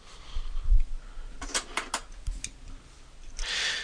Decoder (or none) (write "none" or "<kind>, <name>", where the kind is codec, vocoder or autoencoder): none